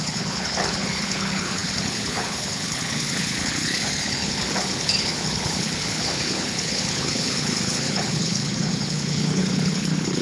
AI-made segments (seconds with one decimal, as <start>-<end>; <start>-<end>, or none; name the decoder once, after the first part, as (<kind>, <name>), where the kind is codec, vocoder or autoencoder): 0.0-10.2 (codec, HILCodec)